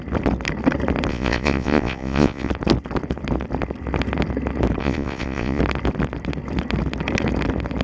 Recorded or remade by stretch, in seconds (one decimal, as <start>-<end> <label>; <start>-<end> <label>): 0.0-1.1 recorded; 1.1-2.5 remade; 2.5-4.8 recorded; 4.8-5.6 remade; 5.6-7.8 recorded

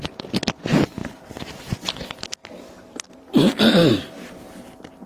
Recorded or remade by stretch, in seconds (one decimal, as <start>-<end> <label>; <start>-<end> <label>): 0.0-5.1 recorded

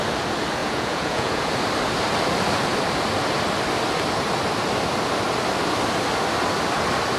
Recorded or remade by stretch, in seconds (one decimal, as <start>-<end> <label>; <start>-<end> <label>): 0.0-0.6 recorded; 0.6-1.5 remade; 1.5-7.2 recorded

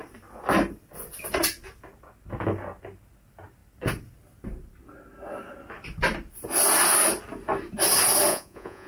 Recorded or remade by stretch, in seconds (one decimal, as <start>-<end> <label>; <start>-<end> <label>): 0.0-8.3 recorded; 8.3-8.9 remade